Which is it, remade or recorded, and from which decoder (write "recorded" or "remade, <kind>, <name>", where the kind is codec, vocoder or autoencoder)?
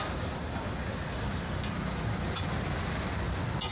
recorded